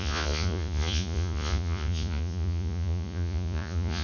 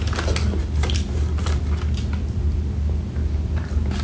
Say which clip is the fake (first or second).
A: first